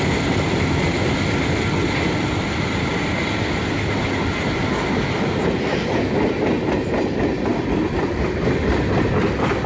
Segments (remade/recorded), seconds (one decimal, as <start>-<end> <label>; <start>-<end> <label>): 0.0-9.7 recorded